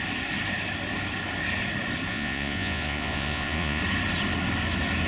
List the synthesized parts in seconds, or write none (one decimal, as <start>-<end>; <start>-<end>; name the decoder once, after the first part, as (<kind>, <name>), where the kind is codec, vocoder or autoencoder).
2.1-3.8 (vocoder, Vocos)